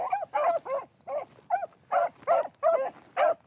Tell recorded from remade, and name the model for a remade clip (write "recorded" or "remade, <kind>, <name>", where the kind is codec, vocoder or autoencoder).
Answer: recorded